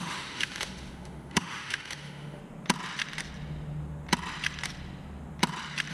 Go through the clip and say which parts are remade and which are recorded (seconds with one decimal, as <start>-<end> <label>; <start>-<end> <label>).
0.0-2.4 remade; 2.4-5.9 recorded